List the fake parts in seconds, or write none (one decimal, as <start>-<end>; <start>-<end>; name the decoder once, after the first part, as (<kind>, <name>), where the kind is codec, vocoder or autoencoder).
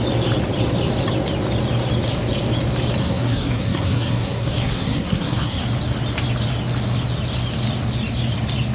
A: 3.0-5.6 (codec, SNAC)